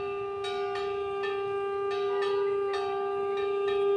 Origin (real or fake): real